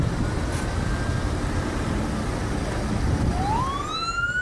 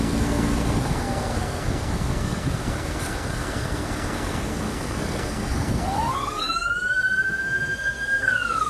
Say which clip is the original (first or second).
first